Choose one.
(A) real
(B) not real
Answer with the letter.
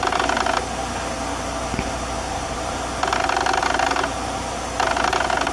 A